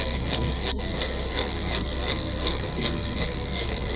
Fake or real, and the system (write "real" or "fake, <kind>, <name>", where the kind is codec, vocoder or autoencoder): fake, codec, SNAC